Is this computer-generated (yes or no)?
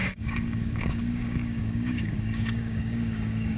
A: yes